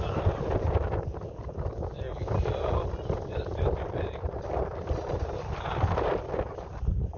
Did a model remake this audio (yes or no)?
no